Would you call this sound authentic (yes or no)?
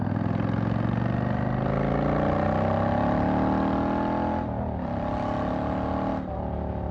yes